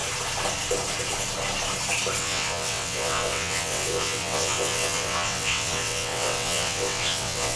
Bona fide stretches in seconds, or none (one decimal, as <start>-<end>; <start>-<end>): 0.0-2.2